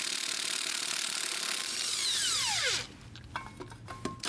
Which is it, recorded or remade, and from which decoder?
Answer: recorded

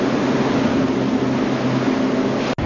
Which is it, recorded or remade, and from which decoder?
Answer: recorded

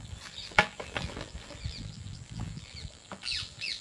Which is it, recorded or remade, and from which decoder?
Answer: remade, vocoder, BigVGAN v2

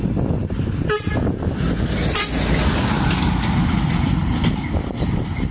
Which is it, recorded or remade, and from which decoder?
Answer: recorded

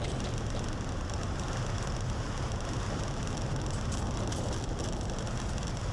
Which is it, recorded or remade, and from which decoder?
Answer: recorded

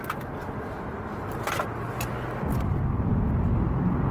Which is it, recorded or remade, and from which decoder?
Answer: remade, vocoder, BigVGAN v2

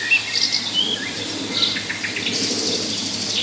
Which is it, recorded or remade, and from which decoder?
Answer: recorded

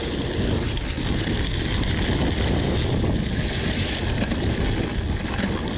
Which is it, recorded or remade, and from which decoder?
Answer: recorded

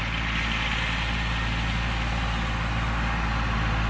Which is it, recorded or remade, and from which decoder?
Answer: recorded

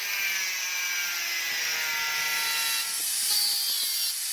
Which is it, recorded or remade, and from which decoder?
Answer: recorded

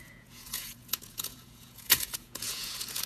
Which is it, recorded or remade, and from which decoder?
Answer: remade, vocoder, Vocos